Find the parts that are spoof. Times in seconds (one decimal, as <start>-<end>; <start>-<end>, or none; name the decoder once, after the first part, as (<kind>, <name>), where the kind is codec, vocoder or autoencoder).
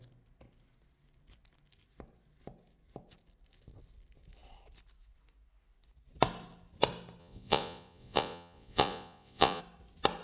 7.2-9.6 (vocoder, Vocos)